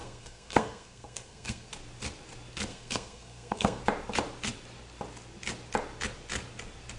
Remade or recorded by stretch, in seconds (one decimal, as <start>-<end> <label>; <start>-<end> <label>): 0.0-1.7 remade; 1.7-2.7 recorded; 2.7-3.8 remade; 3.8-7.0 recorded